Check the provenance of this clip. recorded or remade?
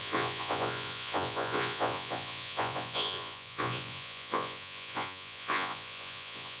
remade